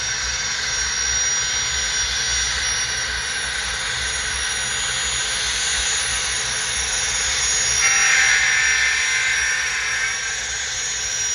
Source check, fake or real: real